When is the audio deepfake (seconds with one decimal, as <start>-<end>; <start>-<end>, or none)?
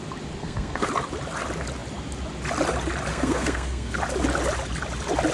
0.4-0.9; 3.1-4.0